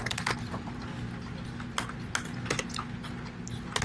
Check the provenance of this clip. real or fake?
real